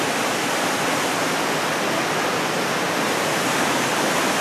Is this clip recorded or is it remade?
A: recorded